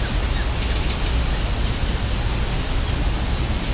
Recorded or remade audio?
recorded